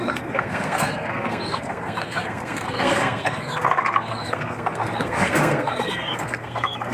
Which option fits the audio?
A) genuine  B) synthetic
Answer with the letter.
B